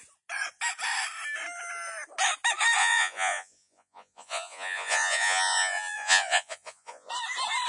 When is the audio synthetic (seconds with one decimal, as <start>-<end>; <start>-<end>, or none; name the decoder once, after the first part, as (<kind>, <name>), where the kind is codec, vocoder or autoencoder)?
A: 2.8-7.1 (vocoder, Vocos)